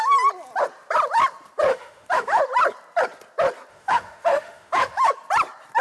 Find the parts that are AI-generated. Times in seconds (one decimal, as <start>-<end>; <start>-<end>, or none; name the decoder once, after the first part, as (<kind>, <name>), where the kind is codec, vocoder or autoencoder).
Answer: 1.7-2.4 (autoencoder, DAC-VAE); 3.7-5.1

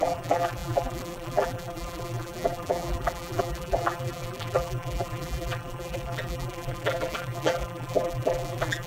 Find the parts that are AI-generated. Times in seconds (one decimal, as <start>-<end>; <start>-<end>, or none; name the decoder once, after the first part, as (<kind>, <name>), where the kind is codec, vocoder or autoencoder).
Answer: 0.0-8.9 (vocoder, BigVGAN v2)